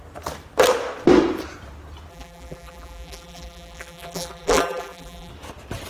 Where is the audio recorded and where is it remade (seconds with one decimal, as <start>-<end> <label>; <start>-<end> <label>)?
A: 0.0-2.1 recorded; 2.1-5.3 remade; 5.3-5.9 recorded